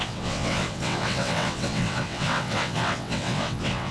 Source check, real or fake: fake